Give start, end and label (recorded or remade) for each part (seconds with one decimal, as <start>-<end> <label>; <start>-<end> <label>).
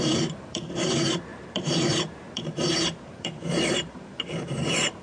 0.0-5.0 remade